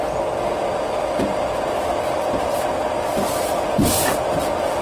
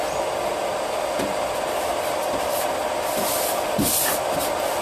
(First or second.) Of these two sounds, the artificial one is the second